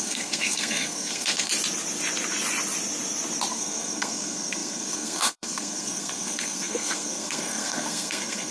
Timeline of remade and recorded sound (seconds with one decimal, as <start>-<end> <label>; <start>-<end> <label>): 0.0-1.5 remade; 1.5-3.5 recorded; 3.5-8.5 remade